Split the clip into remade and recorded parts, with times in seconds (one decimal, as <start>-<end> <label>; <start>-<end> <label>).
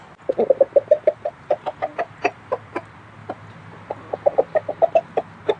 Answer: 0.0-1.9 recorded; 1.9-2.7 remade; 2.7-3.2 recorded; 3.2-4.7 remade; 4.7-5.6 recorded